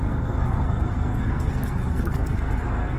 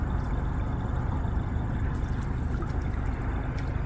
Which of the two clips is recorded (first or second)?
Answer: second